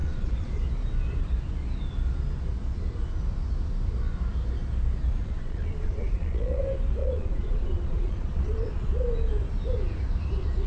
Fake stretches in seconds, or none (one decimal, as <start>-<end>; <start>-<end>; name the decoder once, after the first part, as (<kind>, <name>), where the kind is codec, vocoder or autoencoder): 0.0-0.5 (vocoder, Vocos); 5.2-6.6; 7.0-8.9